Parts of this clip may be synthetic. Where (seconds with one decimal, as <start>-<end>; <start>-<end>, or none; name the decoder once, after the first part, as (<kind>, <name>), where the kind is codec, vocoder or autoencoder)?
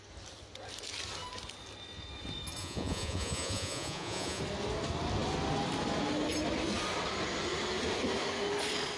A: 2.6-4.4 (vocoder, Vocos)